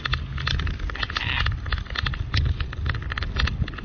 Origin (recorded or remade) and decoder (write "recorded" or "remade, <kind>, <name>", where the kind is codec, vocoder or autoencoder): recorded